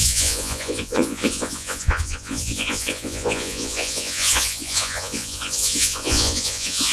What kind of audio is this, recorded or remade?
remade